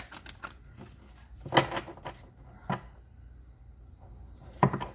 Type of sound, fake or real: real